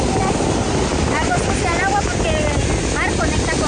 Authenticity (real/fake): real